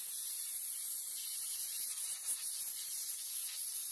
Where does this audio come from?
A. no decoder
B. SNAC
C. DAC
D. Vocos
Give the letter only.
A